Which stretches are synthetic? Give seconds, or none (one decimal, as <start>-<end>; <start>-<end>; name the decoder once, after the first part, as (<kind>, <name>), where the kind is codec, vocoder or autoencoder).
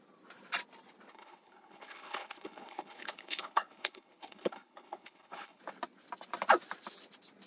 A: 1.1-5.6 (codec, HILCodec)